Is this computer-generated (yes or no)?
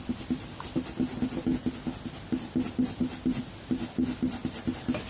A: no